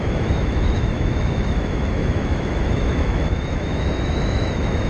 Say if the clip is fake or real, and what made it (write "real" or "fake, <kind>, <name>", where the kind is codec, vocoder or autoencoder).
fake, autoencoder, DAC-VAE